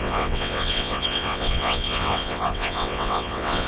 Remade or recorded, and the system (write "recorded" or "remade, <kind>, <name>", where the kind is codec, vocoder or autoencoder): remade, vocoder, WaveNeXt